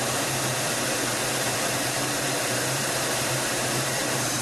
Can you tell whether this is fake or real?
fake